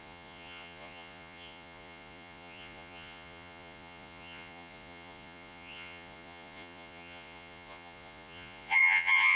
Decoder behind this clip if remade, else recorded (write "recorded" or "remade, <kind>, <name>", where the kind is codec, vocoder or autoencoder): remade, vocoder, Vocos